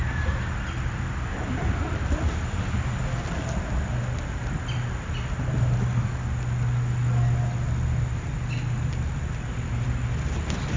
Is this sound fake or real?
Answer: real